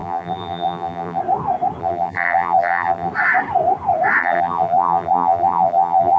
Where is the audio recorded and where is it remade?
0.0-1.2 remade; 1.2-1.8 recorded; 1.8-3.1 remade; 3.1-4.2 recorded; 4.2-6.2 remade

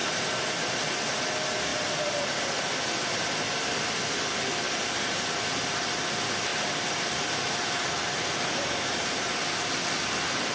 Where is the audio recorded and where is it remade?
0.0-1.2 remade; 1.2-1.7 recorded; 1.7-2.2 remade; 2.2-6.5 recorded; 6.5-7.7 remade; 7.7-10.5 recorded

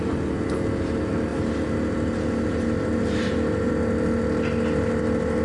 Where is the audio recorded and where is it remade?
0.0-5.4 recorded

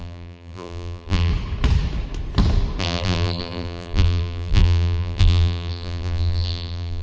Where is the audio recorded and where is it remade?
0.0-1.3 remade; 1.3-2.8 recorded; 2.8-7.0 remade